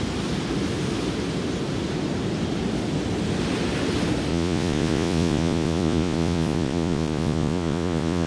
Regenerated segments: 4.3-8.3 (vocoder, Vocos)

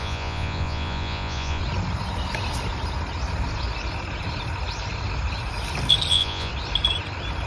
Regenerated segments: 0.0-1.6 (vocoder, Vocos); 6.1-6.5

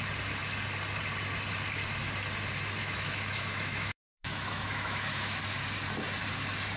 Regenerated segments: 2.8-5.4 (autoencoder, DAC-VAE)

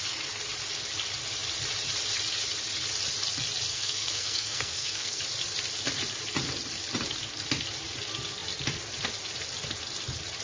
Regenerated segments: 3.7-5.2 (codec, SNAC)

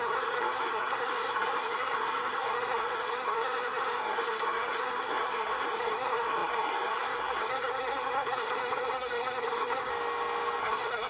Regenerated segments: 0.0-9.9 (codec, SNAC); 10.6-11.1